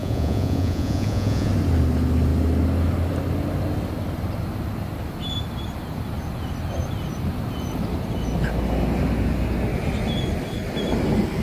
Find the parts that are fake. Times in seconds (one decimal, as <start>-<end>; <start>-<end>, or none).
0.0-1.5